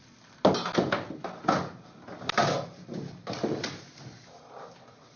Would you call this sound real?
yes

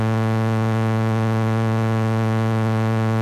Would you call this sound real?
yes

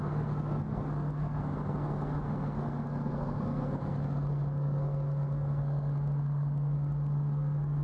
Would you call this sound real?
no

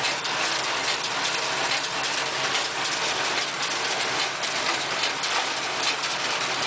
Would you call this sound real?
yes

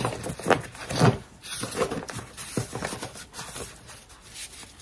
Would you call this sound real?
yes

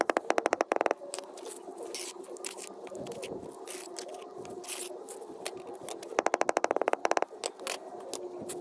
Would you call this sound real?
yes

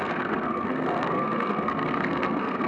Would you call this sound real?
no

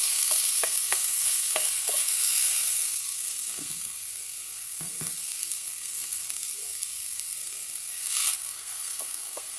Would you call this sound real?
no